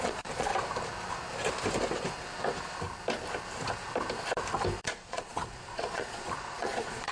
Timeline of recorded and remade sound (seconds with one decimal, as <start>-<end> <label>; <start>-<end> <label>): 0.0-0.5 remade; 0.5-4.8 recorded; 4.8-7.1 remade